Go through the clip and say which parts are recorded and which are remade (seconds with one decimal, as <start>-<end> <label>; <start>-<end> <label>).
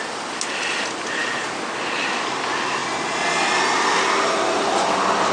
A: 0.0-5.3 recorded